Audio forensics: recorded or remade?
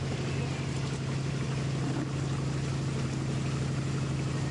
recorded